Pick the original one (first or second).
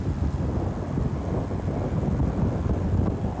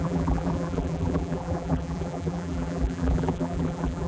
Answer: first